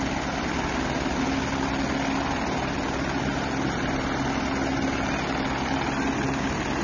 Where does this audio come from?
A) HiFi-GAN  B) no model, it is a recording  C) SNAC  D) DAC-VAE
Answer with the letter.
B